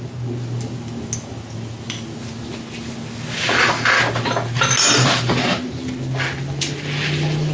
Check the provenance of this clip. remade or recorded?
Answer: recorded